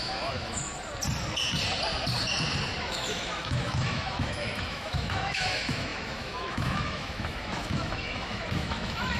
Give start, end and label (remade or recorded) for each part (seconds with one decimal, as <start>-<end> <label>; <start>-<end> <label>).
0.0-0.7 remade; 0.7-2.8 recorded; 2.8-9.2 remade